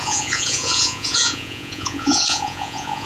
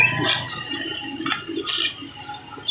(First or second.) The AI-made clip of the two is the first